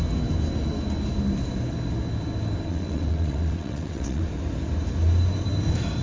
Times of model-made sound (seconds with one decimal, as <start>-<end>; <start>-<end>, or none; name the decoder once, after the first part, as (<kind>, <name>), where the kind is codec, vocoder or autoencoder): 2.7-4.2 (vocoder, WaveNeXt)